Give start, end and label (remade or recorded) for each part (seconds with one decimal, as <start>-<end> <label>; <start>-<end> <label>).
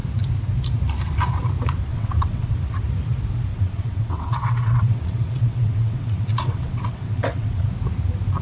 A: 0.0-1.9 recorded; 1.9-2.5 remade; 2.5-3.5 recorded; 3.5-7.7 remade; 7.7-8.4 recorded